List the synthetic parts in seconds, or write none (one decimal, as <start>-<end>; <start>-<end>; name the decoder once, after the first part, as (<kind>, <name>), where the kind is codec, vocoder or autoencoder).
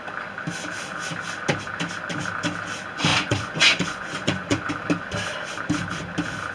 3.1-4.7 (vocoder, Vocos)